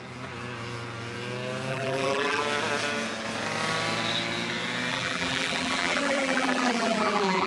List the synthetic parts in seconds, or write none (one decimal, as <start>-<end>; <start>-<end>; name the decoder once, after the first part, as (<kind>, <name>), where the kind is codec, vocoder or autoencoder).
1.7-2.4 (vocoder, BigVGAN v2); 4.9-7.5